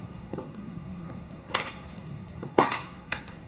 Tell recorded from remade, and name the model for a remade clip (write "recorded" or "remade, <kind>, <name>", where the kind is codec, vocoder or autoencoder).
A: remade, codec, SNAC